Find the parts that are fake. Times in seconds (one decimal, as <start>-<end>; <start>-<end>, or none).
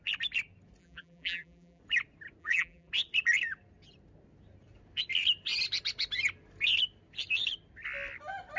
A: 0.8-1.8; 2.4-2.9